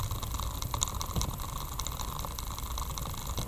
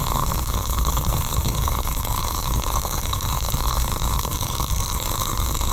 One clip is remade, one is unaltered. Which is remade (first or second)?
second